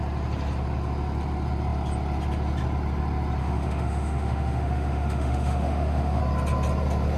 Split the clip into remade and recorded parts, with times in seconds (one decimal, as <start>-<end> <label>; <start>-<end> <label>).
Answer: 0.0-3.4 recorded; 3.4-6.2 remade; 6.2-7.2 recorded